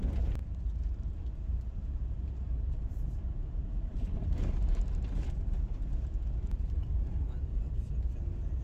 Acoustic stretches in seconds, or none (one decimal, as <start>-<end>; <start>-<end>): 0.0-0.4; 5.4-6.8; 7.7-8.6